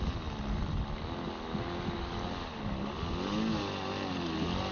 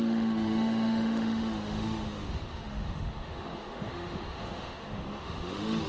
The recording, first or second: first